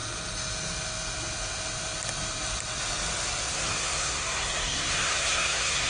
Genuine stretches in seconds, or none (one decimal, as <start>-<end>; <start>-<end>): 0.0-3.5